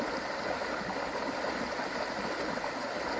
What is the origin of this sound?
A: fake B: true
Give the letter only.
B